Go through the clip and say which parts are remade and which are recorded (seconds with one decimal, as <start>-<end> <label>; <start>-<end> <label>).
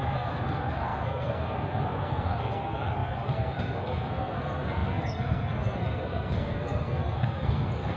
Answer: 0.0-8.0 remade